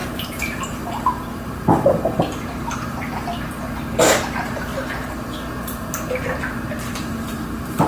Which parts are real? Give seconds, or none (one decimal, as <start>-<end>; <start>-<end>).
3.3-4.0; 4.7-6.9